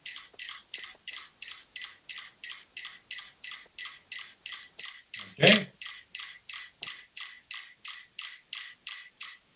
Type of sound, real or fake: real